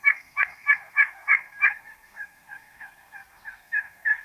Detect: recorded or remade remade